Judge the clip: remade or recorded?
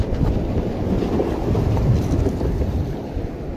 recorded